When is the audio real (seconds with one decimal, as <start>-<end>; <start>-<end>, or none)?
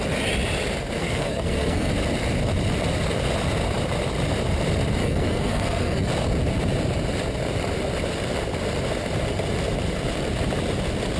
0.0-1.0; 1.9-5.0; 6.1-11.2